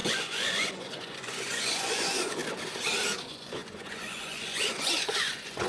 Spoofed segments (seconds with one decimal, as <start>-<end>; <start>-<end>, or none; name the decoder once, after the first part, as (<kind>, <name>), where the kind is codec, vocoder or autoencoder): 0.0-2.4 (vocoder, Vocos); 3.2-5.7